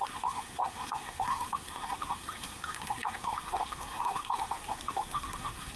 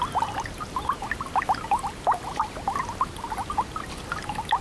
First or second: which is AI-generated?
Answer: first